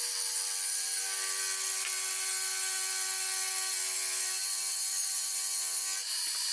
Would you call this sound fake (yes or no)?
no